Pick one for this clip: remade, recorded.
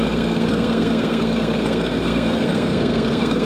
remade